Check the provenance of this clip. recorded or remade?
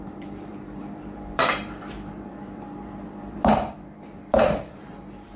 remade